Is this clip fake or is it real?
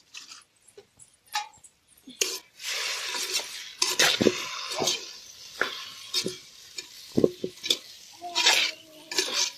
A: real